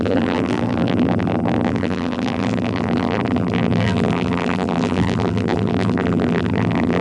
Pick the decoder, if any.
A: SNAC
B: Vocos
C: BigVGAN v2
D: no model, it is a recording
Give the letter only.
C